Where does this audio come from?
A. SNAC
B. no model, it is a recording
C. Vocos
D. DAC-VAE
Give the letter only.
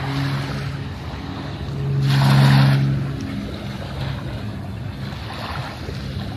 B